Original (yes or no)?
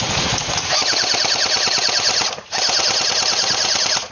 no